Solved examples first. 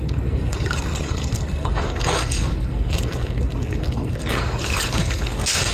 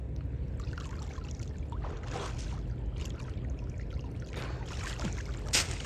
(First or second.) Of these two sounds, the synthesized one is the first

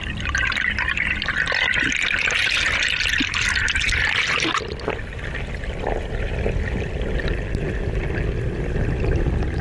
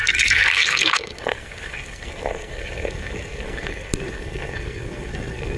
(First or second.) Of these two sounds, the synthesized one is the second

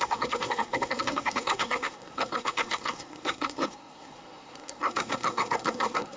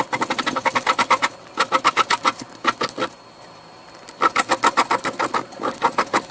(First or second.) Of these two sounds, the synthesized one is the first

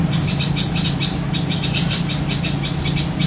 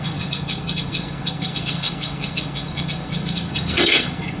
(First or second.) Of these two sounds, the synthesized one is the second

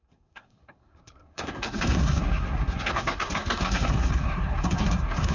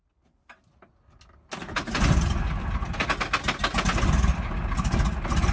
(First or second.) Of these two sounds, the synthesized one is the first